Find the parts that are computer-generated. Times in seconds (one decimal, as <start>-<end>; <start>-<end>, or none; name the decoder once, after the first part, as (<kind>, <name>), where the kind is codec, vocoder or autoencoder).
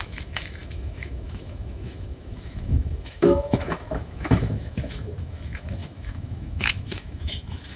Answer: 0.0-7.8 (autoencoder, DAC-VAE)